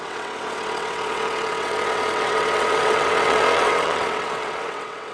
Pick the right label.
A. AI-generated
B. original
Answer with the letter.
A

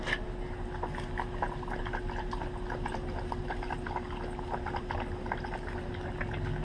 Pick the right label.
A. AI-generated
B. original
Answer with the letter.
B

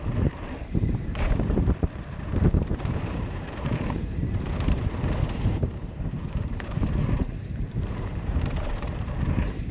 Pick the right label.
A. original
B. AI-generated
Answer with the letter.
B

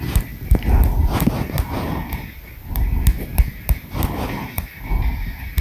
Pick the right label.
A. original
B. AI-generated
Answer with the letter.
A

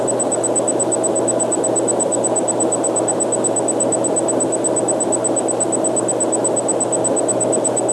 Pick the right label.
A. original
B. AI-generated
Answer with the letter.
A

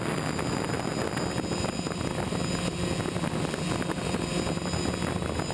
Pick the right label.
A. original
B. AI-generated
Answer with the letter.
A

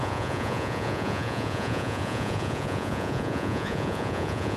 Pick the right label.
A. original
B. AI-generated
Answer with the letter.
B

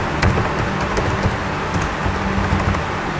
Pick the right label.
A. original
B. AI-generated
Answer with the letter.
A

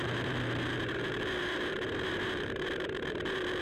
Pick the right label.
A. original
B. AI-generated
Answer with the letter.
B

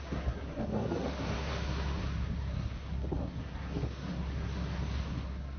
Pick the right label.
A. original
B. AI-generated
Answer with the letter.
B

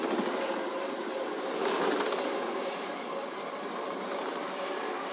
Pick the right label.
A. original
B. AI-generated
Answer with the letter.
A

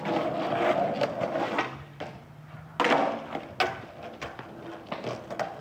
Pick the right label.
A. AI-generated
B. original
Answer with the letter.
B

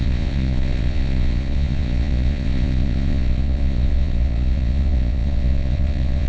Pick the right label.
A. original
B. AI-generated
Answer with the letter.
B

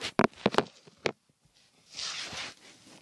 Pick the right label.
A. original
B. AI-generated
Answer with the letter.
A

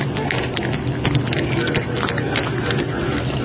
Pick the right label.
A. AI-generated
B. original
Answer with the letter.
B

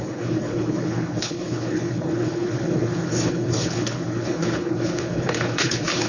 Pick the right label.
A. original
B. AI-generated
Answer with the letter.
B